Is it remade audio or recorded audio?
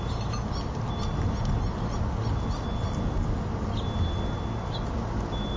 recorded